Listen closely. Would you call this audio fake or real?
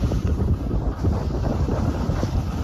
real